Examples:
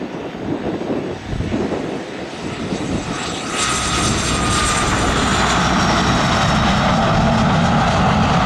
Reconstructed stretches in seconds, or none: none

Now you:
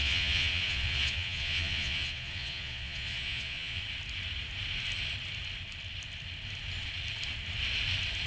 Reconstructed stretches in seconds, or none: 0.0-3.8 (vocoder, Vocos)

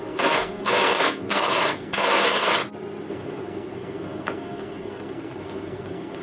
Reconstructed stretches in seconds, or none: 0.0-2.5 (codec, SNAC); 3.1-6.2

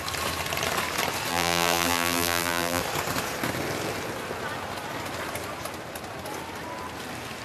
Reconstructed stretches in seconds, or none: 1.3-2.8 (vocoder, BigVGAN v2)

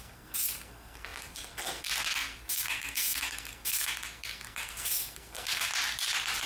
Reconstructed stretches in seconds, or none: 0.0-5.7 (codec, SNAC)

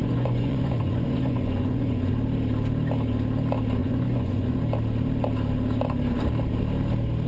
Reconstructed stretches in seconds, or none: 0.0-2.1 (vocoder, Vocos); 3.8-4.6